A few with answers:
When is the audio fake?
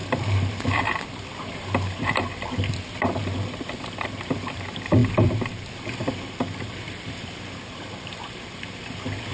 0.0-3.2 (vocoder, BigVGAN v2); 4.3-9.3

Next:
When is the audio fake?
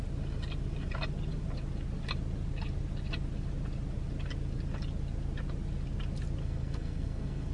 6.4-7.5 (codec, SNAC)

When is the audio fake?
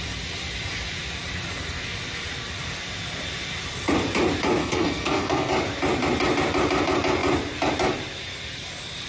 4.6-5.5 (codec, SNAC)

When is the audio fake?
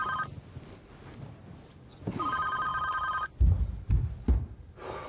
none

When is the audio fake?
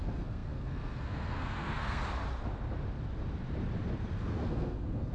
0.0-2.0 (codec, SNAC); 4.2-5.1